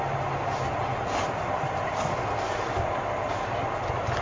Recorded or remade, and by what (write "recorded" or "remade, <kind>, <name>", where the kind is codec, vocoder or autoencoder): recorded